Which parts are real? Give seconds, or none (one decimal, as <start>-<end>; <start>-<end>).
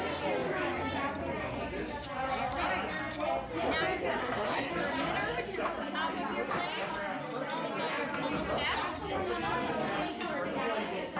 0.0-4.2; 4.7-11.2